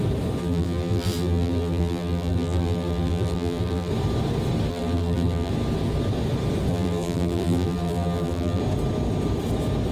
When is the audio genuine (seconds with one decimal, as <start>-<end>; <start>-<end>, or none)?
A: 0.0-0.4; 3.9-4.7; 5.5-6.7; 8.6-9.9